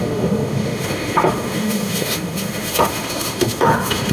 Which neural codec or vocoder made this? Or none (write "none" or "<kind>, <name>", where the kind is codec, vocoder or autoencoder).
autoencoder, DAC-VAE